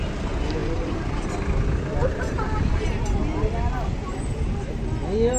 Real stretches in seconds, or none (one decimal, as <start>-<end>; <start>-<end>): 0.0-0.6; 1.3-2.0; 3.0-5.4